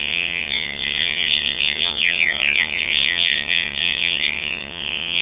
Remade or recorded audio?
remade